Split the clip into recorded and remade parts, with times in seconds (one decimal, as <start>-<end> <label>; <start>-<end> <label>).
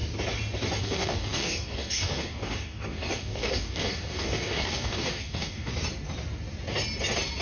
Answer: 0.0-0.8 recorded; 0.8-5.7 remade; 5.7-7.4 recorded